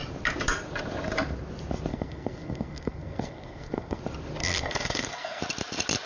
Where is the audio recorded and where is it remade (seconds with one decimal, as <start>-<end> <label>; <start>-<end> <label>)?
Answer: 0.0-1.9 recorded; 1.9-4.0 remade; 4.0-4.4 recorded; 4.4-5.4 remade; 5.4-6.1 recorded